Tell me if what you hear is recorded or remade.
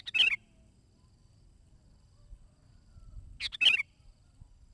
recorded